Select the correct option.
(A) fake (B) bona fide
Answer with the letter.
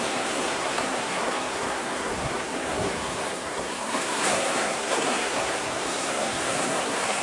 A